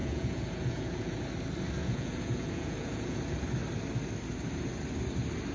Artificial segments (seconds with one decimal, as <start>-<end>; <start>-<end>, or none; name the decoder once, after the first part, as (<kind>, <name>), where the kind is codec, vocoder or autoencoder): 0.0-1.2 (vocoder, Vocos); 1.8-3.2